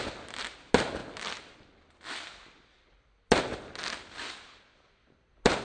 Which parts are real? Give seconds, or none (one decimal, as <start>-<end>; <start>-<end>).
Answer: 0.0-5.6

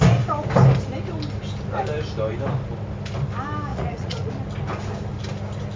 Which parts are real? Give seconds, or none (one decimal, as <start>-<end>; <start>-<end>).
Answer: 0.0-3.7; 4.3-5.8

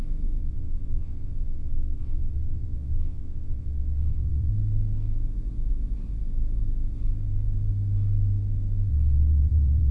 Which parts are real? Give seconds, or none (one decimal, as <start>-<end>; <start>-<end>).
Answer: 0.0-0.4; 4.5-8.9

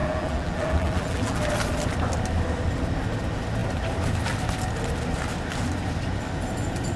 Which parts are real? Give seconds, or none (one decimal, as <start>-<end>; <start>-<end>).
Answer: 1.4-7.0